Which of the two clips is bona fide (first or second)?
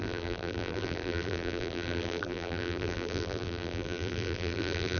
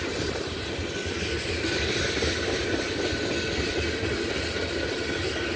second